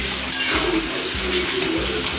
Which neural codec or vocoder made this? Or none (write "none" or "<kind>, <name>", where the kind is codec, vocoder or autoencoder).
none